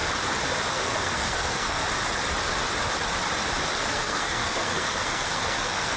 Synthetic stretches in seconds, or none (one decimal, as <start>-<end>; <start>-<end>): 0.7-1.8; 3.8-6.0